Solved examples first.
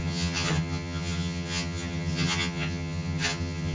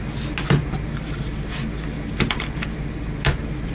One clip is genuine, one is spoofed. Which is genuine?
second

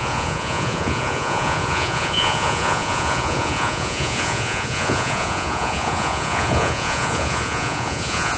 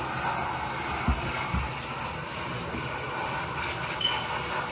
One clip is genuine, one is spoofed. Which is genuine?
second